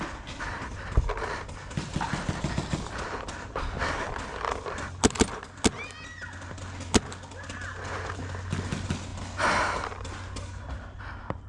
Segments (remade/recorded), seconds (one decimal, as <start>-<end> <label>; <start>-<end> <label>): 0.0-11.5 recorded